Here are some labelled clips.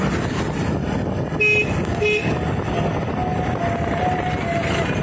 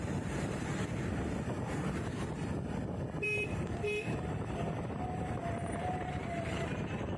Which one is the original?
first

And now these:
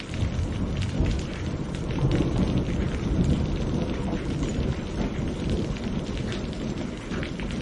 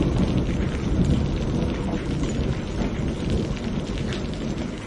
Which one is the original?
second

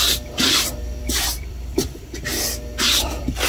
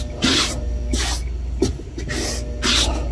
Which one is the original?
second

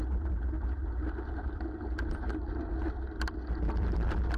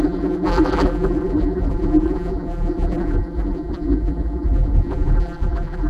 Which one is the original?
first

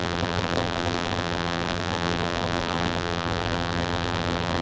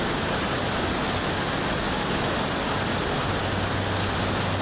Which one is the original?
second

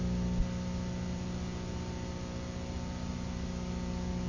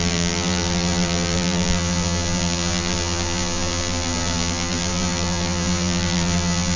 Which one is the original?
first